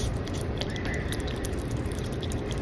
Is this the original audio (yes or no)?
no